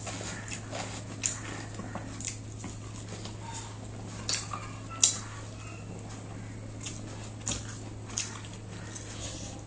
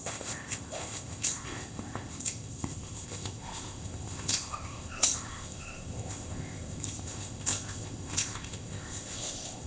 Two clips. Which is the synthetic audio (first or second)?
second